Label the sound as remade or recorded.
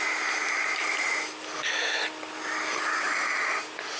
recorded